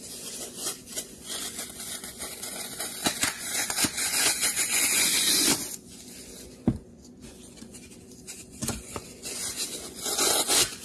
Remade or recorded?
remade